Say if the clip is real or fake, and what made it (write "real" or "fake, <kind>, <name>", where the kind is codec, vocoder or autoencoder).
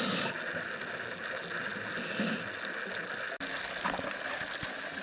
real